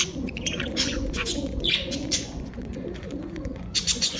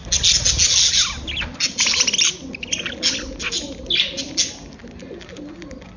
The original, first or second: second